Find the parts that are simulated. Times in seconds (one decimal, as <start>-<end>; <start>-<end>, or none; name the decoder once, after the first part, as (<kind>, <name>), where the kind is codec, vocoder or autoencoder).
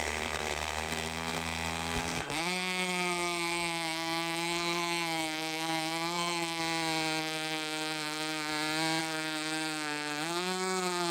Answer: 0.0-6.6 (codec, SNAC); 7.2-8.5; 9.0-11.1